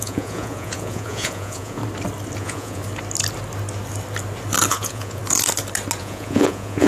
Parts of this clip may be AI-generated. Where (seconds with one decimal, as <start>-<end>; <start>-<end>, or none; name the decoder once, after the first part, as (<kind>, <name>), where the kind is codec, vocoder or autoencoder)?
0.0-1.8 (vocoder, Vocos); 2.4-2.8; 4.7-5.2; 6.0-6.9